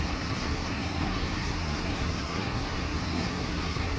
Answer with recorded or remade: remade